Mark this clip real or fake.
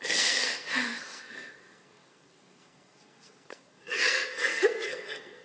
fake